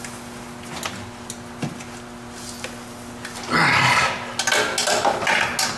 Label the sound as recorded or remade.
recorded